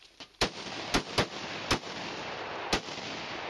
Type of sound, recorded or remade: recorded